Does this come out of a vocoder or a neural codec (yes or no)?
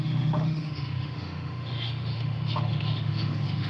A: yes